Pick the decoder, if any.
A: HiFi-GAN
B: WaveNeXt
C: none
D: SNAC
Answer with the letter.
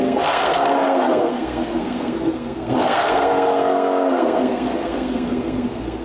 D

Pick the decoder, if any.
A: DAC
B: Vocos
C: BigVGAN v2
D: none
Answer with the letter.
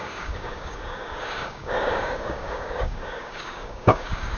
A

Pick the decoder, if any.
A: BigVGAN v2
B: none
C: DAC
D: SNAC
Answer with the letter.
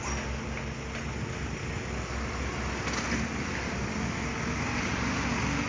B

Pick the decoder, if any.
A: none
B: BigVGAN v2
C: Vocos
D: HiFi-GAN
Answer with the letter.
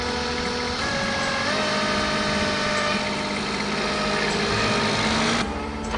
A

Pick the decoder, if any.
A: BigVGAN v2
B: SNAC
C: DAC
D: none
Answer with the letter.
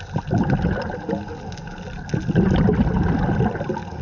D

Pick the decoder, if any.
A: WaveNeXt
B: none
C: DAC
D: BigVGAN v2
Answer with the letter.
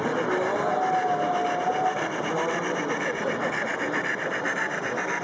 B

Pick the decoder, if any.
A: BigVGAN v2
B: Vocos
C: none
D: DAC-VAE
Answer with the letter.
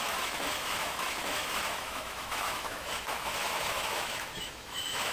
D